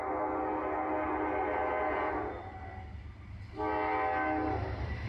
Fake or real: real